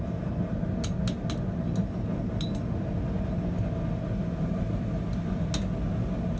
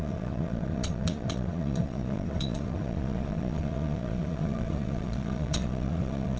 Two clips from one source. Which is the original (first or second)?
first